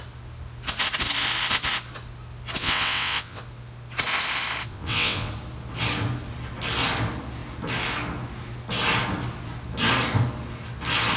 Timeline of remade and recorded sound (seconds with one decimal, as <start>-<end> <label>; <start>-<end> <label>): 0.0-2.6 recorded; 2.6-3.4 remade; 3.4-4.7 recorded; 4.7-5.3 remade; 5.3-11.2 recorded